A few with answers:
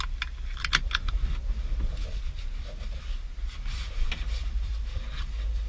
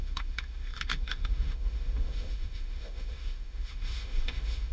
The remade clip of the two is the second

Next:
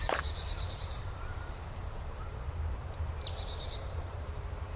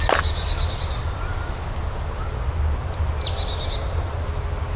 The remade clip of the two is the first